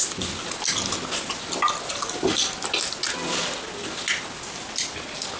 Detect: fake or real real